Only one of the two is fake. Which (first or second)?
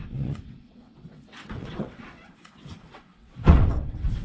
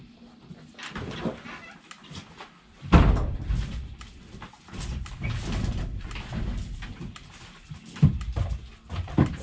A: first